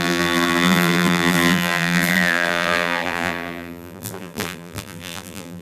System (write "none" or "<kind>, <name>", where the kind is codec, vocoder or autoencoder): vocoder, BigVGAN v2